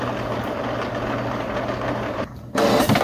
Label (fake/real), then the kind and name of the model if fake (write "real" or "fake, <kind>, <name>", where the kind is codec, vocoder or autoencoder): real